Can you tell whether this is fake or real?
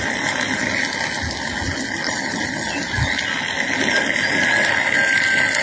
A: real